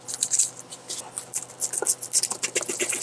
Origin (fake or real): real